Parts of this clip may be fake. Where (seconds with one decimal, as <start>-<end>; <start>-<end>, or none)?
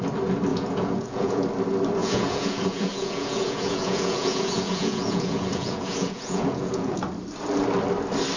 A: 0.5-1.4; 2.0-7.0